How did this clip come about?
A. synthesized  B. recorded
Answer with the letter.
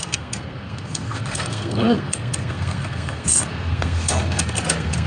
A